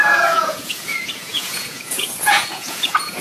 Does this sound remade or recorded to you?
remade